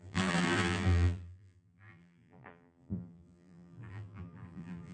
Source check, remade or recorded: remade